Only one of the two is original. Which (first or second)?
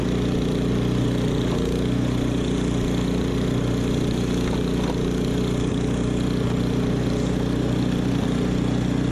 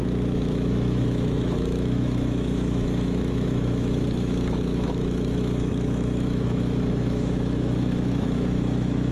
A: first